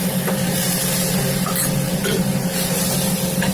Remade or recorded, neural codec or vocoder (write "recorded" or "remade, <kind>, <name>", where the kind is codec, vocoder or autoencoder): recorded